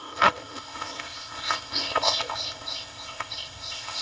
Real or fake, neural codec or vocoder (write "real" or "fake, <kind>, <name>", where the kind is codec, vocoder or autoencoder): fake, codec, ZipCodec